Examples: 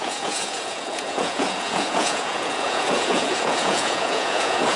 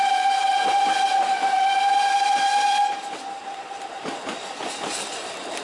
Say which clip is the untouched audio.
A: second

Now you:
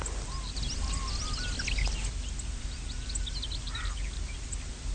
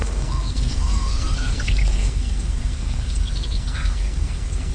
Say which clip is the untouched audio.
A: first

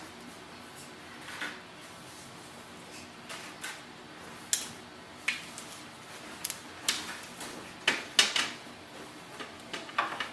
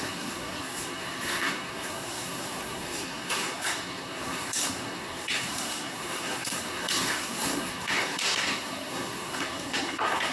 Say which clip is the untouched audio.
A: first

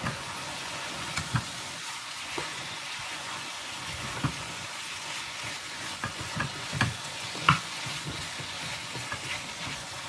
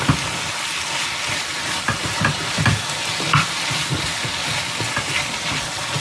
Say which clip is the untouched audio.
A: second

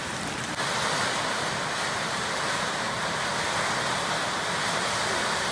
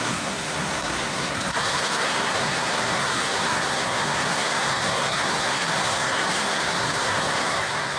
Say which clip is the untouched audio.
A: first